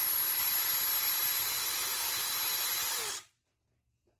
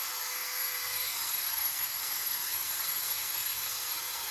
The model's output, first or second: second